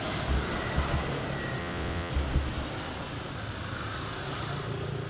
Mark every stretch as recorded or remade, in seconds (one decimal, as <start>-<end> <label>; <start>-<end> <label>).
0.0-1.6 recorded; 1.6-2.1 remade; 2.1-5.1 recorded